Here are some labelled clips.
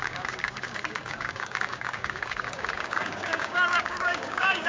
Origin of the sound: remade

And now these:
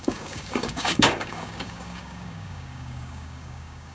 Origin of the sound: remade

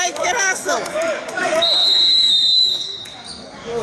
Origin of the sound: remade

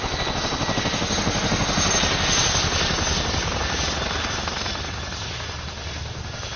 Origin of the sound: recorded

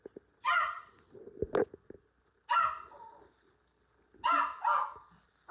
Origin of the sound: recorded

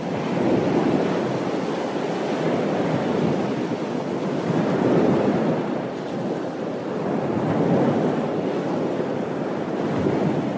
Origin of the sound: recorded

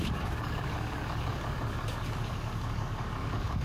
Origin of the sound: remade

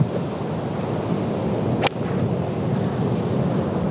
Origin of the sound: recorded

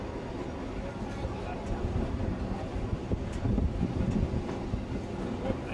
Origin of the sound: recorded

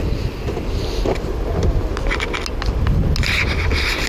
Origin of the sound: recorded